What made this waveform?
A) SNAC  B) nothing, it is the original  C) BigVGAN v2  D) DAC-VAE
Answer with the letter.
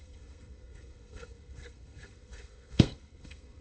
A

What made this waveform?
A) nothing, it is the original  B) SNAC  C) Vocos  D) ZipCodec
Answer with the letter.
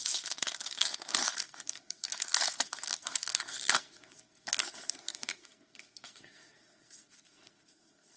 B